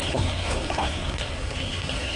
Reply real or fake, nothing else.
fake